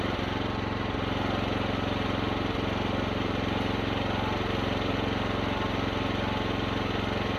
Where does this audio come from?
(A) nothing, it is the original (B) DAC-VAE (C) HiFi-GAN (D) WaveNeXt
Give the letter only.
A